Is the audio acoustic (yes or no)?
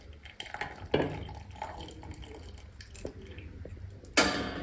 yes